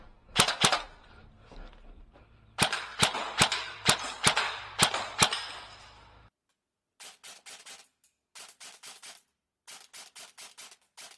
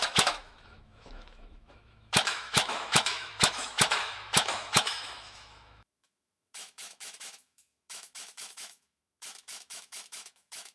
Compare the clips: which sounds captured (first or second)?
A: first